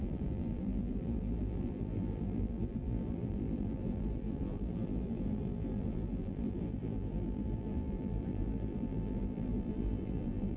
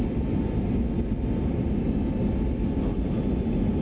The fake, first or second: first